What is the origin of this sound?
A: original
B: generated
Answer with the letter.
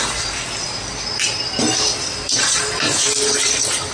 B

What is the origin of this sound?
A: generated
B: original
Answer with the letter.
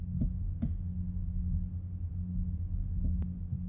B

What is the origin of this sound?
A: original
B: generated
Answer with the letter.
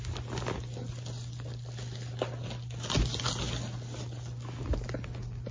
A